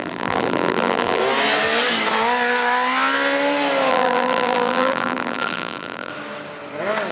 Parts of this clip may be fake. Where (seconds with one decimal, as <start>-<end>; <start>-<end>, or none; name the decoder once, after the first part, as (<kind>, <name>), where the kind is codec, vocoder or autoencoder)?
0.0-1.2 (vocoder, BigVGAN v2); 3.9-6.1